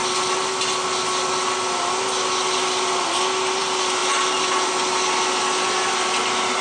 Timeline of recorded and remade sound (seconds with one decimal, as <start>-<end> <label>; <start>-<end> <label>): 0.0-6.6 recorded